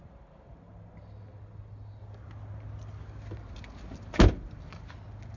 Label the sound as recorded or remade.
recorded